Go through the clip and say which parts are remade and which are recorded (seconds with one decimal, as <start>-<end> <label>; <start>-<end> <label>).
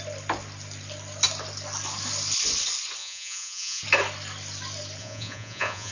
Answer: 0.0-3.0 recorded; 3.0-3.8 remade; 3.8-5.0 recorded; 5.0-5.9 remade